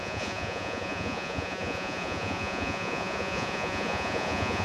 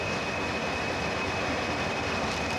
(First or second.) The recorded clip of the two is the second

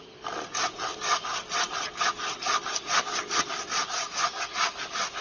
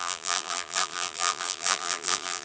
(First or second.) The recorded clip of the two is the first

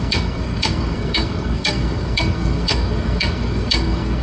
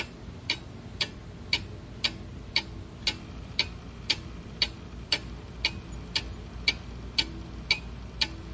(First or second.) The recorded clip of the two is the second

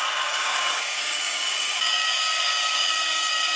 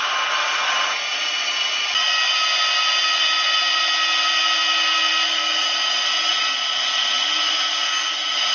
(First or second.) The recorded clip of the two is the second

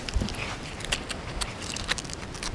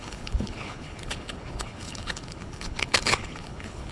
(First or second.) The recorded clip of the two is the first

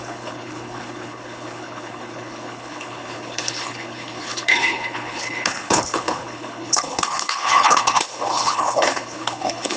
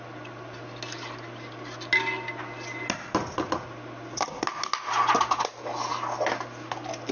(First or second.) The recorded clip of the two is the second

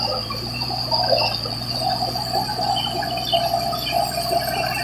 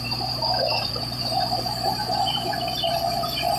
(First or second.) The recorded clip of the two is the first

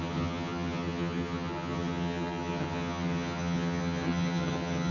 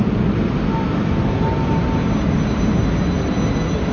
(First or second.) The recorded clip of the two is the second